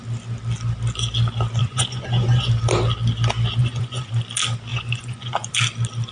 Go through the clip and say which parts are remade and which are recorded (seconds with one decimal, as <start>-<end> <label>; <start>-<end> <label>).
0.0-1.6 recorded; 1.6-2.5 remade; 2.5-3.6 recorded; 3.6-4.1 remade; 4.1-4.7 recorded; 4.7-5.5 remade; 5.5-6.1 recorded